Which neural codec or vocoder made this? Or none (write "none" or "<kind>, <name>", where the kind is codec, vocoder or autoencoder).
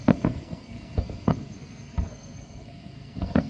codec, SNAC